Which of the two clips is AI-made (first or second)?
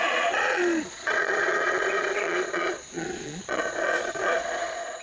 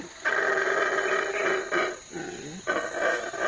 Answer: first